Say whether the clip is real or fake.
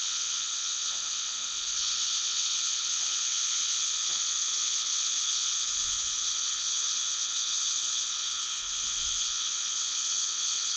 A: fake